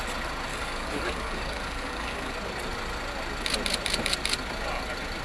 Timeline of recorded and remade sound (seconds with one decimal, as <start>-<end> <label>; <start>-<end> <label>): 0.0-0.5 recorded; 0.5-2.3 remade; 2.3-5.2 recorded